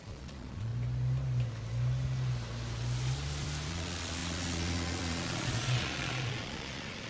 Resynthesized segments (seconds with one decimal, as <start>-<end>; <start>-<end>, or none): 0.0-0.7; 3.7-7.1

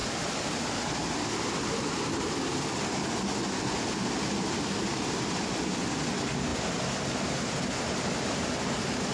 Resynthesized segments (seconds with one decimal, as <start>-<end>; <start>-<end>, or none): none

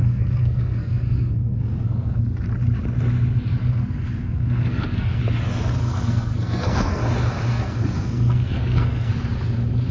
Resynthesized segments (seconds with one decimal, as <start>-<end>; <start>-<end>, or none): 0.0-2.2; 3.6-5.2; 5.8-7.0; 7.5-9.1

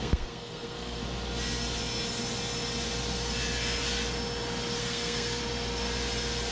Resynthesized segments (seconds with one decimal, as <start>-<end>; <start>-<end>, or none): 0.0-1.0; 4.8-5.4

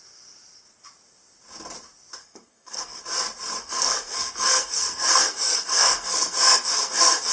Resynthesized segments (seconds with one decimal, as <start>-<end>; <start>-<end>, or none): 2.2-3.0; 3.6-7.3

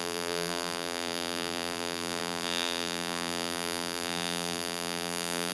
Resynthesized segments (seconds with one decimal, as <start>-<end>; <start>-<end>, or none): 0.0-5.5